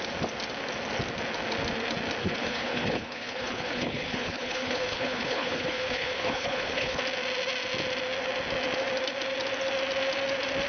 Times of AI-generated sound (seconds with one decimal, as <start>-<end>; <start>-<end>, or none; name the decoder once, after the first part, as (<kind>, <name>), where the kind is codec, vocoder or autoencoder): 2.2-7.0 (codec, HILCodec)

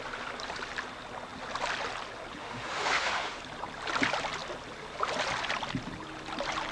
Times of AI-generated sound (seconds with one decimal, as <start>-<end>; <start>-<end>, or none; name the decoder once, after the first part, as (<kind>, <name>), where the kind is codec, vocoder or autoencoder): 2.4-3.4 (autoencoder, DAC-VAE)

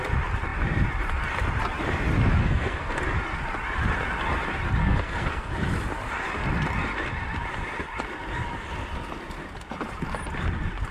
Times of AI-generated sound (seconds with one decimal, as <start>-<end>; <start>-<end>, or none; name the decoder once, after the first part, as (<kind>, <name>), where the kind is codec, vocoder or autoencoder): 2.4-3.0 (codec, SNAC); 4.8-5.5

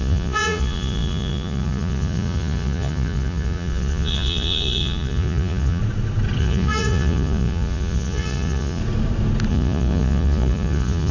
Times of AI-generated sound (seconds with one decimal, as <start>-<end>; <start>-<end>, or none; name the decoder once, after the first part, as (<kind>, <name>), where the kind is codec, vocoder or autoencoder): 0.0-5.8 (vocoder, Vocos); 6.4-8.8; 9.5-11.1

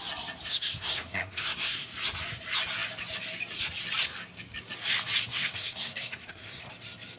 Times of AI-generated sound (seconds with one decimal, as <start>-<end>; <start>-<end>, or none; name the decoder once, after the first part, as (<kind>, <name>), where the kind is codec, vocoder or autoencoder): 0.5-1.9 (codec, SNAC); 5.3-6.7

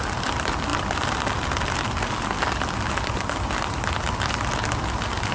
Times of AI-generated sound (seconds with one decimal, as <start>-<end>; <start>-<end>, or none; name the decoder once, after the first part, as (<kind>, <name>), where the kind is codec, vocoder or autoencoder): none

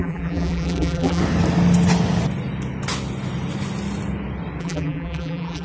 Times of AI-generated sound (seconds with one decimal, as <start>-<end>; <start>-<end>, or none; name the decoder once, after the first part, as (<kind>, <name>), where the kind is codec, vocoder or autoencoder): 0.0-1.2 (vocoder, BigVGAN v2); 4.6-5.6

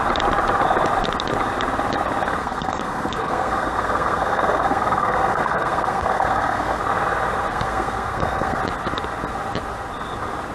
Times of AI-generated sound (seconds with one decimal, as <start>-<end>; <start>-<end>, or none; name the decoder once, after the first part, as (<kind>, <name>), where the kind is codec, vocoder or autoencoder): 2.4-6.8 (codec, SNAC); 7.5-8.6